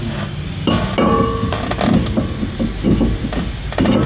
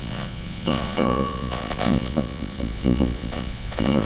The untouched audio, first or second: first